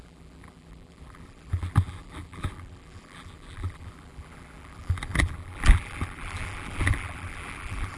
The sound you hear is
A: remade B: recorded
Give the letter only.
A